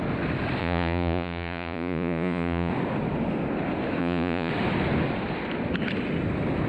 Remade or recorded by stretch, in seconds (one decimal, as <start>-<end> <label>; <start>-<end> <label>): 0.0-0.6 recorded; 0.6-2.7 remade; 2.7-4.0 recorded; 4.0-4.5 remade; 4.5-6.7 recorded